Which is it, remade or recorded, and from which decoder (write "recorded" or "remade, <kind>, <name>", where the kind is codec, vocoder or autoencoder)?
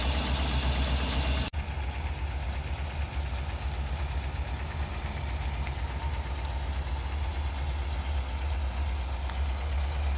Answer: recorded